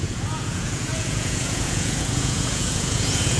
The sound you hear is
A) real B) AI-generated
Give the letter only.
B